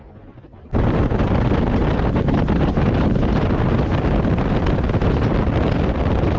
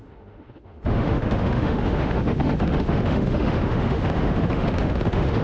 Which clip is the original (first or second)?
first